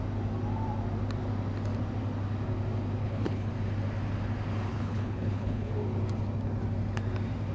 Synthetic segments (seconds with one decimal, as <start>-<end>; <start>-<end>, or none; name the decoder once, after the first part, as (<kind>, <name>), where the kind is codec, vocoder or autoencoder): 3.0-3.5 (codec, HILCodec); 4.7-5.7